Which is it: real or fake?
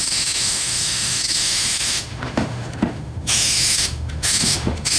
fake